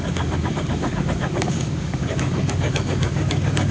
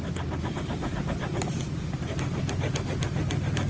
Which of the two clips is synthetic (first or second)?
first